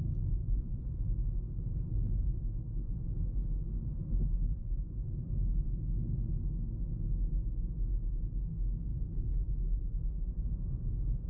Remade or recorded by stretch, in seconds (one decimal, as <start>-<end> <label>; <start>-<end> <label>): 0.0-0.4 recorded; 0.4-1.0 remade; 1.0-4.4 recorded; 4.4-5.9 remade; 5.9-8.9 recorded; 8.9-10.7 remade; 10.7-11.3 recorded